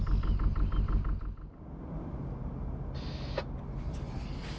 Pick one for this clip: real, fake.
real